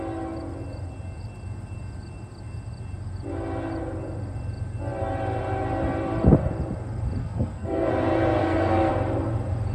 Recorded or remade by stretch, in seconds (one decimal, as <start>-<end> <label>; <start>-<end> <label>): 0.0-7.2 recorded; 7.2-7.9 remade; 7.9-8.4 recorded; 8.4-8.9 remade; 8.9-9.7 recorded